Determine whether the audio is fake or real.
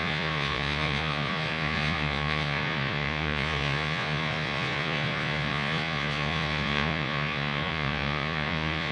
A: fake